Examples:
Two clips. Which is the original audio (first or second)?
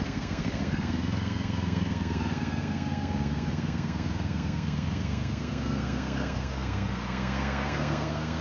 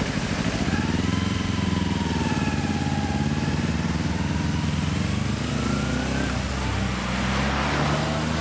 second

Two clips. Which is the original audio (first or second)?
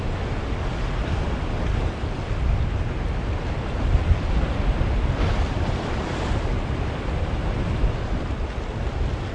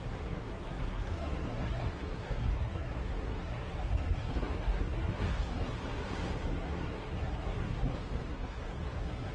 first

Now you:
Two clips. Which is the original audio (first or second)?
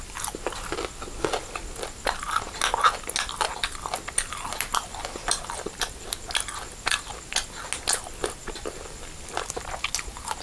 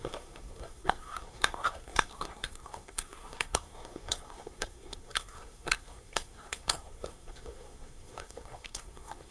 first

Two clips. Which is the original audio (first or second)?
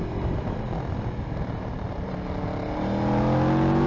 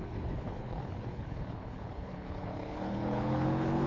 first